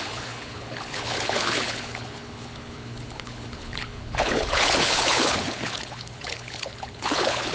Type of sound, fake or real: fake